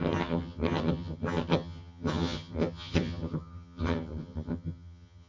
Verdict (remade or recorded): remade